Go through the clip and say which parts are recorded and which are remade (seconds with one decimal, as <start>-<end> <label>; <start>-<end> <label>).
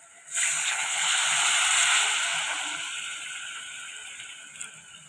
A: 0.0-0.6 recorded; 0.6-1.2 remade; 1.2-5.1 recorded